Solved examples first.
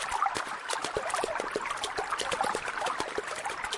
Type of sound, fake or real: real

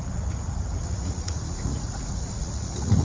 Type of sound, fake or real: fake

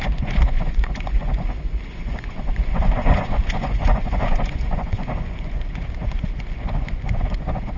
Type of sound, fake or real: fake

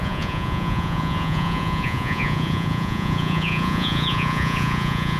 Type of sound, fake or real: fake